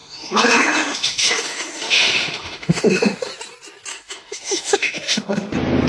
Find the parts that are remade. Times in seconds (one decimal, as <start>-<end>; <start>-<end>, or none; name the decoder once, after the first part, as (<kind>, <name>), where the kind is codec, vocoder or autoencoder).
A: 0.0-3.3 (autoencoder, DAC-VAE); 3.9-5.5